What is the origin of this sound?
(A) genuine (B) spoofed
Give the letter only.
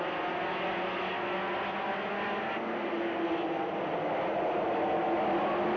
A